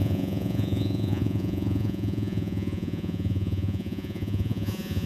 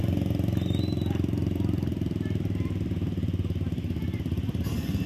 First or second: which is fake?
first